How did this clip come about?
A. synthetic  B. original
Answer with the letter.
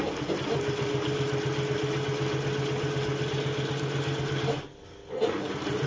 B